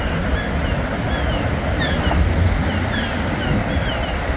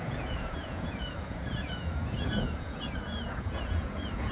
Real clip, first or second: first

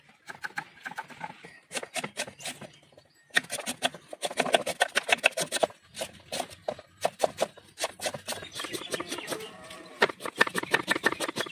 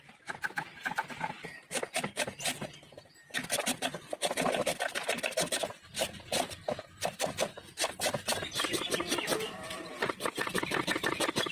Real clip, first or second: first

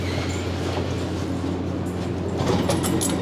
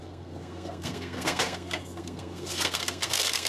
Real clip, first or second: first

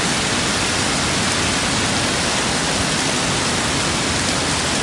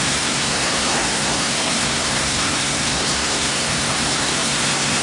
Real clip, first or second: first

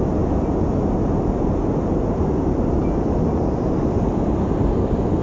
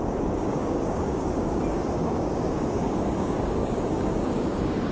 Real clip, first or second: first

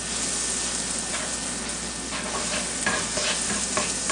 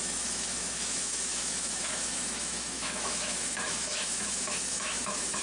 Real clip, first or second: first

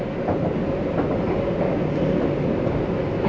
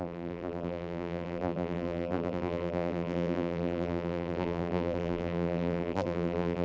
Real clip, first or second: first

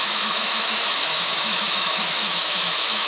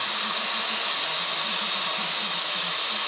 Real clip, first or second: second